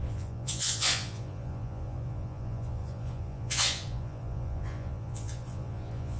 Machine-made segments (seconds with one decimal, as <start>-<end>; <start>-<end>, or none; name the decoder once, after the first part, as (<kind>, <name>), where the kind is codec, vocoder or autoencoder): 0.0-6.2 (vocoder, Vocos)